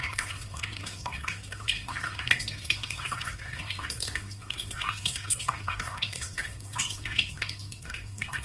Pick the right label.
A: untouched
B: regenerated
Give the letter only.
B